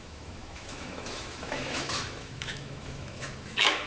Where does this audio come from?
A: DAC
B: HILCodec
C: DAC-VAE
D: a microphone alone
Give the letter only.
C